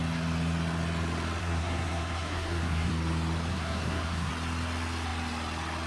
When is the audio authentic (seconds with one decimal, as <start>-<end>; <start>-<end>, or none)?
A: 0.0-1.4; 2.9-3.5; 4.3-5.9